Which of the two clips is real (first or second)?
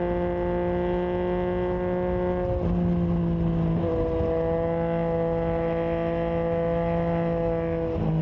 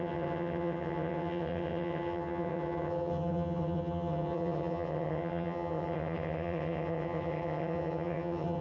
first